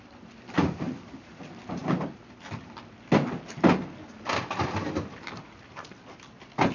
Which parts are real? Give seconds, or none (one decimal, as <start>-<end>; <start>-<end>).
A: 0.0-6.7